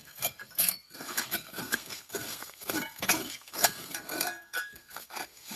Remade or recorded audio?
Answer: remade